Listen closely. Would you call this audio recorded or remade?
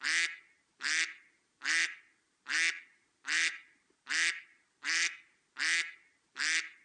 recorded